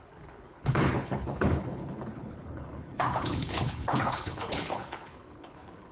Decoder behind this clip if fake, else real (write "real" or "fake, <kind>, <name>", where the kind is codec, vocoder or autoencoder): fake, codec, HILCodec